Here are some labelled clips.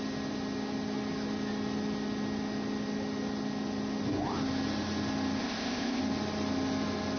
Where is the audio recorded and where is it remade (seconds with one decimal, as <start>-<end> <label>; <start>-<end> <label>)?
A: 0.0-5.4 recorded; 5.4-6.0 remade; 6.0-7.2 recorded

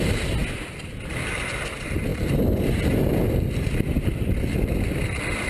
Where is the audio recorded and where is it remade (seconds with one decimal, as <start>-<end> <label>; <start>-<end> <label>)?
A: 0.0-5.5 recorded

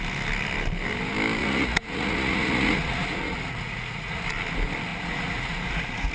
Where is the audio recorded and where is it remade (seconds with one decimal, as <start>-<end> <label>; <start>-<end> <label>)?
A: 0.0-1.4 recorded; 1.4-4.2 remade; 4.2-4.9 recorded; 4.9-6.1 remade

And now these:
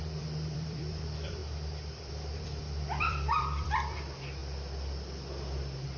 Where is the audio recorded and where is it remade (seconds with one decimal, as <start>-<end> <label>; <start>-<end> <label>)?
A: 0.0-4.4 remade; 4.4-6.0 recorded

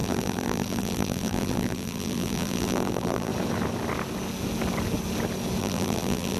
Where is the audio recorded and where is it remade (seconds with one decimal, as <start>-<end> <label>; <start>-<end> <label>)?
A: 0.0-3.3 remade; 3.3-5.6 recorded; 5.6-6.4 remade

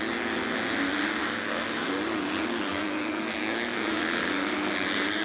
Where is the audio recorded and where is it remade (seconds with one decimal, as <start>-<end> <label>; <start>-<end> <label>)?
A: 0.0-1.2 recorded; 1.2-1.9 remade; 1.9-2.7 recorded; 2.7-4.0 remade; 4.0-5.2 recorded

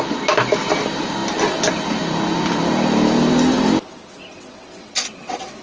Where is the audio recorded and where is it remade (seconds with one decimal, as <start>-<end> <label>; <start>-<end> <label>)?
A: 0.0-4.2 recorded; 4.2-5.6 remade